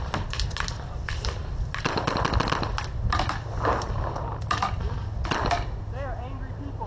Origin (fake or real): real